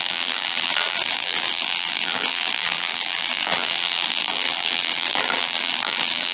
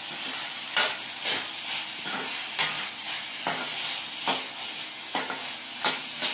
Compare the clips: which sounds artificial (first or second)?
first